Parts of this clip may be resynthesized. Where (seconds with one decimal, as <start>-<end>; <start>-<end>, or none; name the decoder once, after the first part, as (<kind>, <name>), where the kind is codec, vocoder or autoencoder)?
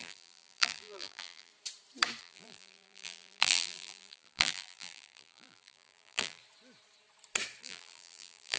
0.0-1.5 (vocoder, BigVGAN v2); 2.2-6.4; 7.6-8.6